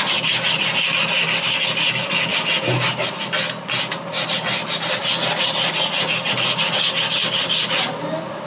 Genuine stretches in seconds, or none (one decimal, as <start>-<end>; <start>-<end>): 0.0-8.5